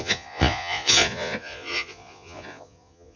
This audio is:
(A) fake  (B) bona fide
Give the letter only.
A